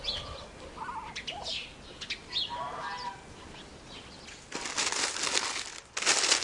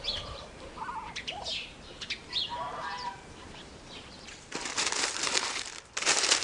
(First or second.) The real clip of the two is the first